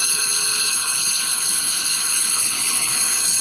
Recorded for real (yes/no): no